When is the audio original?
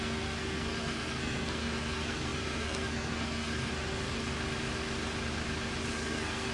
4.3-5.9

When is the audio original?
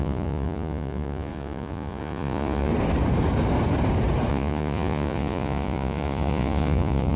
2.7-4.3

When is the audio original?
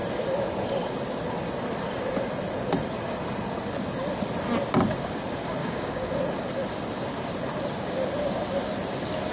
0.0-5.6; 6.2-9.3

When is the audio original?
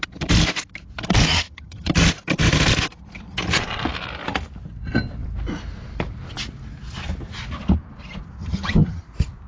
0.0-1.3; 1.9-8.4; 9.0-9.5